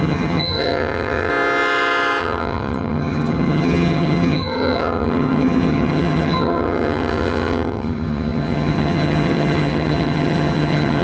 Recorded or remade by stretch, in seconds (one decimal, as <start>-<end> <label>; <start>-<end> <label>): 0.0-1.3 remade; 1.3-2.2 recorded; 2.2-11.0 remade